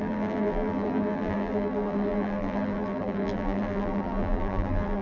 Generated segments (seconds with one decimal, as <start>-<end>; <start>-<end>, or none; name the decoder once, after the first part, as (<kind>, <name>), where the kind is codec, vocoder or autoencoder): 0.0-5.0 (vocoder, BigVGAN v2)